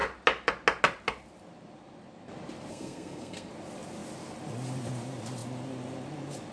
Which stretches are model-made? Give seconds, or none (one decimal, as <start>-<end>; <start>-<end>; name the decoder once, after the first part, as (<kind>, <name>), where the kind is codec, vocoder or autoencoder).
2.7-3.5 (codec, SNAC)